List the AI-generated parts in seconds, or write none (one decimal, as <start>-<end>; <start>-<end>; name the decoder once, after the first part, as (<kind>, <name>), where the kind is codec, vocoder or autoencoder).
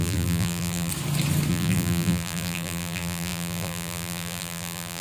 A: 0.0-0.9 (vocoder, BigVGAN v2); 1.5-5.0